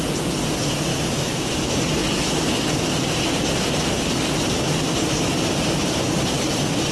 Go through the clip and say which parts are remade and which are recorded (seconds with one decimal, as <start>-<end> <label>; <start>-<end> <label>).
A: 0.0-0.9 recorded; 0.9-1.5 remade; 1.5-6.9 recorded